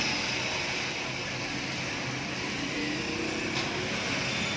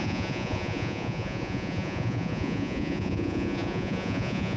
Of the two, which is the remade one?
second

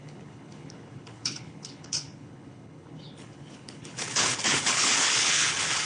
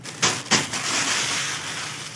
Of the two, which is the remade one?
first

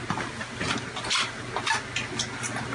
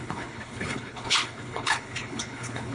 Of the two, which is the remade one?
second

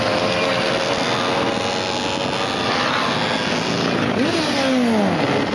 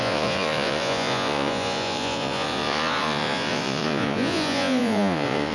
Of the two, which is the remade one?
second